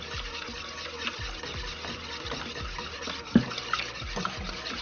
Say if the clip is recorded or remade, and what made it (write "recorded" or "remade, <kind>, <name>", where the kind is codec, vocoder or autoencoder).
recorded